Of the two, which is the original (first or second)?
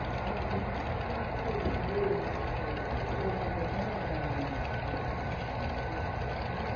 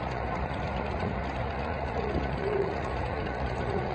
first